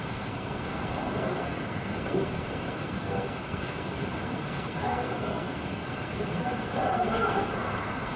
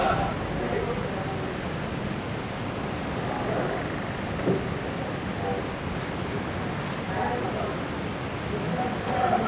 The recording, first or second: second